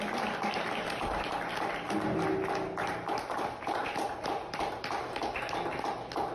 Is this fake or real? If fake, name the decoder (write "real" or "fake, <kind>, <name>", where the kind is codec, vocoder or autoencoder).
real